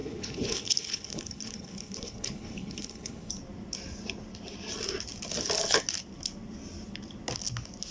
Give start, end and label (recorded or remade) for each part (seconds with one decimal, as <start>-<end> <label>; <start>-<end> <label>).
0.0-3.3 remade; 3.3-7.9 recorded